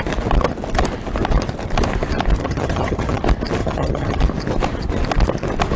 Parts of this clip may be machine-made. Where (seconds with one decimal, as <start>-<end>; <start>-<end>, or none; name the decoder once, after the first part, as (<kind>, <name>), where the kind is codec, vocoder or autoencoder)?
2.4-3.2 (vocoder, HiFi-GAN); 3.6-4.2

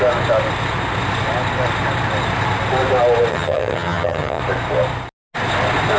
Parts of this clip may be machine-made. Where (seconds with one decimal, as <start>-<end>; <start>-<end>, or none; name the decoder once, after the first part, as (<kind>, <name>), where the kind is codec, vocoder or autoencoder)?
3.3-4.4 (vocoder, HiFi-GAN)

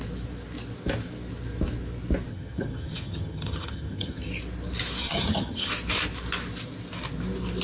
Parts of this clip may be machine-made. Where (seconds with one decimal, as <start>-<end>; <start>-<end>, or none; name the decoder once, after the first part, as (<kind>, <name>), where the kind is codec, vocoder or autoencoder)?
2.3-4.3 (vocoder, HiFi-GAN); 5.0-5.7